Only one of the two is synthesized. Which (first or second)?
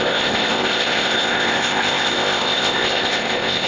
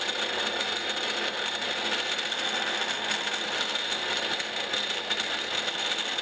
first